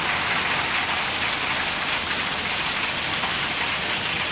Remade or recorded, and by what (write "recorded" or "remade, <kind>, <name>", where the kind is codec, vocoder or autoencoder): recorded